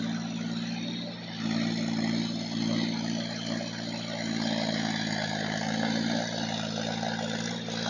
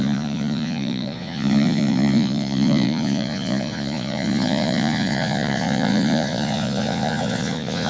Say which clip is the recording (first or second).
first